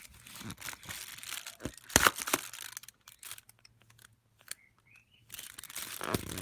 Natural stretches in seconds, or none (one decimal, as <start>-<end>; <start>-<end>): 0.0-1.1; 1.6-4.1; 5.2-6.4